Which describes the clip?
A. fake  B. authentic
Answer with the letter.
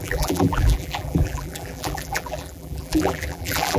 A